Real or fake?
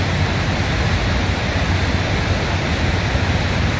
real